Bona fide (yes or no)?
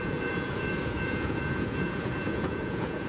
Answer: no